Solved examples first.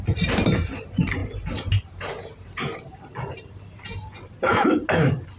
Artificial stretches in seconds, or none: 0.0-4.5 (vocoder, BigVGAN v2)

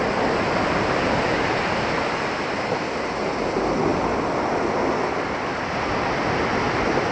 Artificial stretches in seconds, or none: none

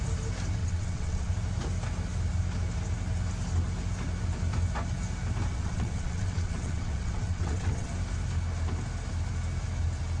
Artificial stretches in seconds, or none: 0.6-1.3 (vocoder, WaveNeXt); 5.5-7.9

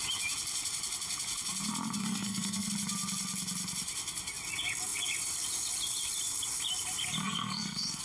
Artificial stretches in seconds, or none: 2.0-2.7 (codec, SNAC); 7.2-8.0

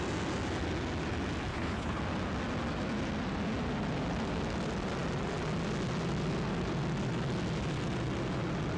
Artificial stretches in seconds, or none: 1.5-2.0 (codec, HILCodec)

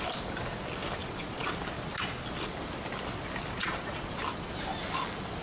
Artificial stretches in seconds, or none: 1.0-1.5 (vocoder, Vocos); 3.6-4.2